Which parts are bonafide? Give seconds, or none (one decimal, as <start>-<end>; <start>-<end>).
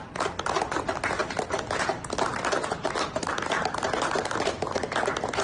0.0-5.4